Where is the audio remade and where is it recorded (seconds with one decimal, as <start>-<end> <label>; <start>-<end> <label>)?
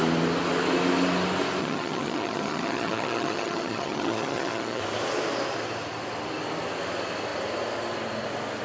0.0-1.6 recorded; 1.6-4.8 remade; 4.8-8.6 recorded